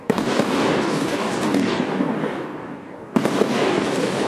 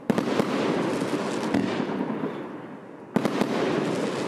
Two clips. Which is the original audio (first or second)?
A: second